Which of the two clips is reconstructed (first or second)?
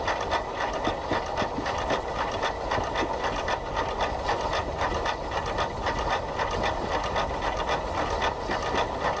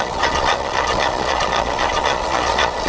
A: second